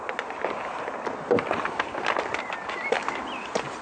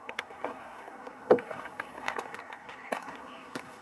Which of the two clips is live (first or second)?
first